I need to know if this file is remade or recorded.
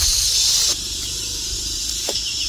recorded